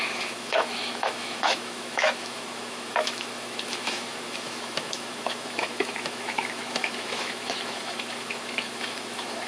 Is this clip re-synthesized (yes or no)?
yes